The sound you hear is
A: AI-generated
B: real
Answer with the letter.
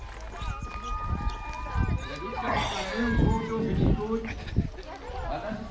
B